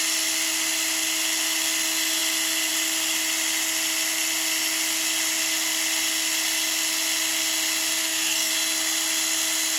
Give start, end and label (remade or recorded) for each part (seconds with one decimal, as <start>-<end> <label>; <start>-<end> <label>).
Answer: 0.0-8.0 recorded; 8.0-8.5 remade; 8.5-9.8 recorded